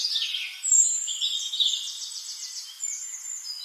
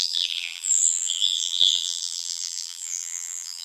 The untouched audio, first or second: first